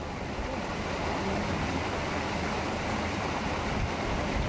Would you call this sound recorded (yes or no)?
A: yes